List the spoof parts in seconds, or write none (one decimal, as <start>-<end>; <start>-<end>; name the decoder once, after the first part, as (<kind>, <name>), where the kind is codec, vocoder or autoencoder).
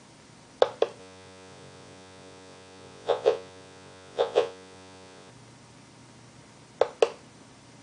1.0-5.3 (vocoder, Vocos)